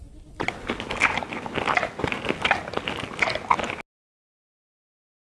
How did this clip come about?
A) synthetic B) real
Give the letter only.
B